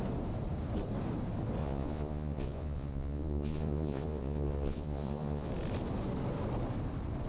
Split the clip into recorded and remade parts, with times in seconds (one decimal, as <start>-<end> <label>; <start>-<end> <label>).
0.0-1.6 recorded; 1.6-5.5 remade; 5.5-7.3 recorded